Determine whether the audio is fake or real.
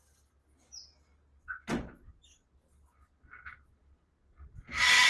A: real